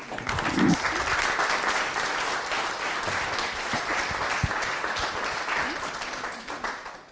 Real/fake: real